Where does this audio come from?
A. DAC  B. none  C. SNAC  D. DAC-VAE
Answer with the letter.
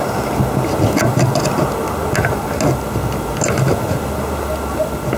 B